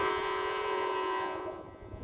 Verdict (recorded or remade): remade